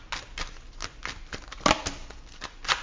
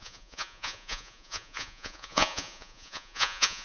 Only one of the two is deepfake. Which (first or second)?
second